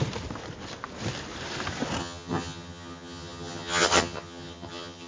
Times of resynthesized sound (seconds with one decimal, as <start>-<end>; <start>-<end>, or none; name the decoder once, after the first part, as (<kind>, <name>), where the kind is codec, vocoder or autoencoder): 2.0-5.1 (vocoder, HiFi-GAN)